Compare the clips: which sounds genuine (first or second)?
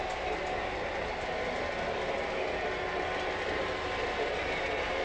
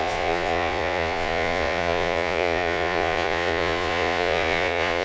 first